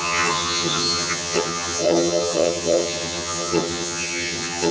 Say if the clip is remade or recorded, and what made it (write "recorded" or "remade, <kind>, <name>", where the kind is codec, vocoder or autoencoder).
remade, vocoder, HiFi-GAN